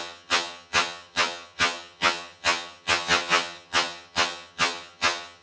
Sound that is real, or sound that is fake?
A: fake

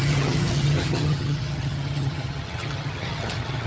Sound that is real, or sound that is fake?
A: fake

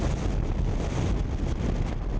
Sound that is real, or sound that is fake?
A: real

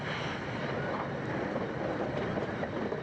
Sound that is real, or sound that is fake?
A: real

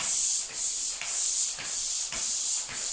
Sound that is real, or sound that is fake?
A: real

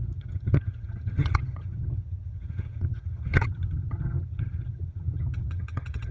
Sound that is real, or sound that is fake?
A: fake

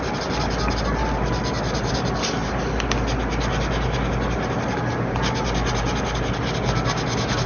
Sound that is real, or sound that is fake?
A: real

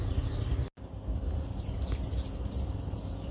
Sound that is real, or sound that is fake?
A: real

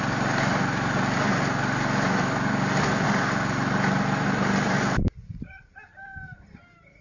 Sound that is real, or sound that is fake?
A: real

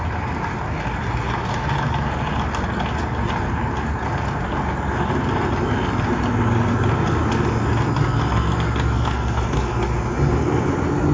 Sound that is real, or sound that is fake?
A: real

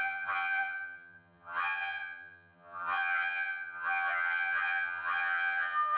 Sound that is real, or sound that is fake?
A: fake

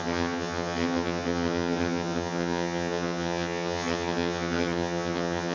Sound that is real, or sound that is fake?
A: fake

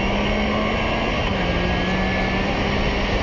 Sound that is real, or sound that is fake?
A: real